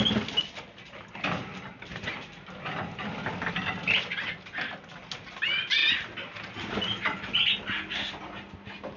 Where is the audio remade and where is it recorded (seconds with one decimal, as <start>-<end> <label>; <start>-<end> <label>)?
0.0-9.0 recorded